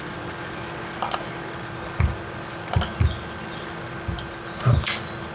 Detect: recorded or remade recorded